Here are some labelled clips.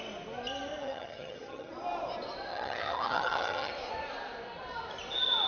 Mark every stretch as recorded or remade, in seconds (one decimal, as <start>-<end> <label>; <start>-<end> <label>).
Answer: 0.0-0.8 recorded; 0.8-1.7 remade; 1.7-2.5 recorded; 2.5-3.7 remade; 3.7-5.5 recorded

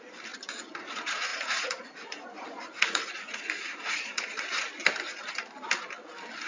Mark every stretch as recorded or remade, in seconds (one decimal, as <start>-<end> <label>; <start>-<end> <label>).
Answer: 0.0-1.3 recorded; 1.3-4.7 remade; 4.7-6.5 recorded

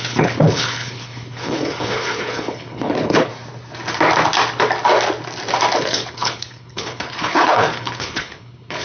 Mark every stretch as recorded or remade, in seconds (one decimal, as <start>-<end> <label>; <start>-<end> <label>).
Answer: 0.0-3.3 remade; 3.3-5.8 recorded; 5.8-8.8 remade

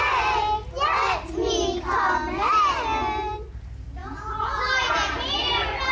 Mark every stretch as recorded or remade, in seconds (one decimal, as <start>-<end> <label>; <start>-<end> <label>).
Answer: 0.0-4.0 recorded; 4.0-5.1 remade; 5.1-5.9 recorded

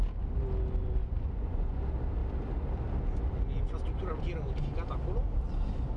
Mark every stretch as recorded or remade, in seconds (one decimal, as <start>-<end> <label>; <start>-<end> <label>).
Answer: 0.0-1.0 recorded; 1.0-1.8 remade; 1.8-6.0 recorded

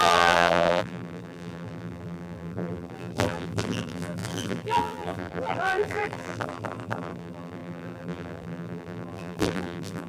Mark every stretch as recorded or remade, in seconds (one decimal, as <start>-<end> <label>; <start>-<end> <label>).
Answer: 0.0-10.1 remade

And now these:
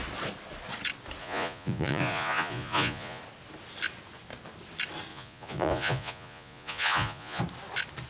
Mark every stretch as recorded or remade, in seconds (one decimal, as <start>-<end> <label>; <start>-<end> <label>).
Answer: 0.0-1.2 recorded; 1.2-3.2 remade; 3.2-5.1 recorded; 5.1-7.4 remade; 7.4-8.1 recorded